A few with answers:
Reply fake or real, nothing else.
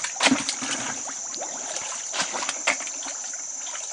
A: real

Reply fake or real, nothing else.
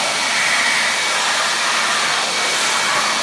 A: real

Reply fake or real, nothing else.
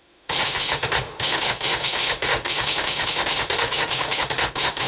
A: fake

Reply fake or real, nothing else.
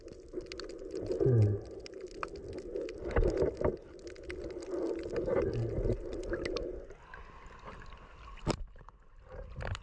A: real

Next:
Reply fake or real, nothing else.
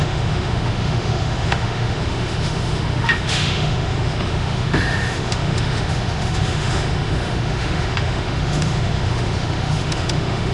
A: fake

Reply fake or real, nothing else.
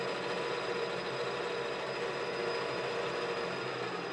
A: real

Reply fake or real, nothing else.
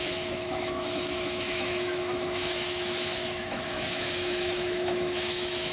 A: fake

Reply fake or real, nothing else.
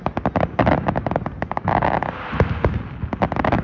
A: real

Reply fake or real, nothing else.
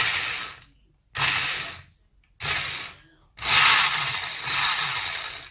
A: real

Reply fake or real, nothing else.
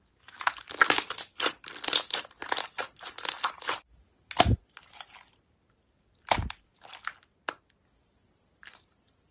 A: real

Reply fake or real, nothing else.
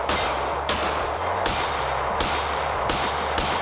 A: real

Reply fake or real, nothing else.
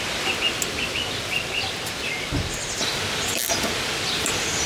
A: real